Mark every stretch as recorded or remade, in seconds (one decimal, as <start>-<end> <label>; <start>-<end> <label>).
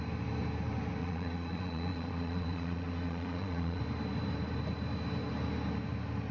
0.0-1.0 recorded; 1.0-3.8 remade; 3.8-6.3 recorded